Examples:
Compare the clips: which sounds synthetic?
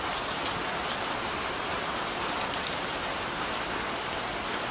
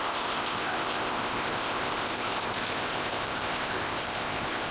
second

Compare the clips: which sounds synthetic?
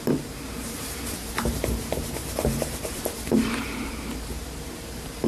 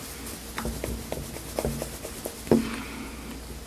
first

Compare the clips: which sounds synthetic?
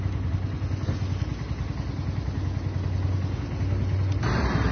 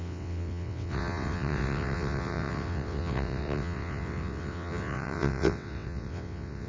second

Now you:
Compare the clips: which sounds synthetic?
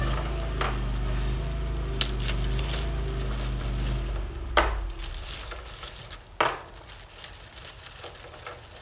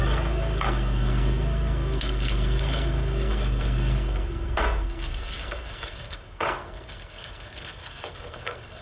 second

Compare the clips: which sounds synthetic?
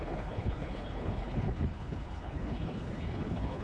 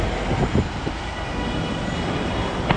first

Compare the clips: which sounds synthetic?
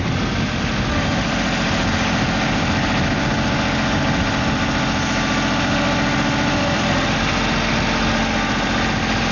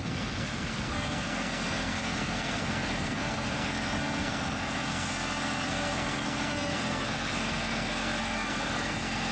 second